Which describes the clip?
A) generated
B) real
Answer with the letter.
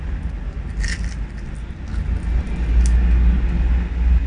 B